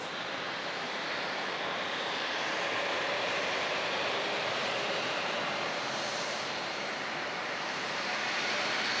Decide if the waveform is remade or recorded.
remade